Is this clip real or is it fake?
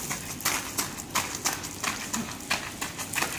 real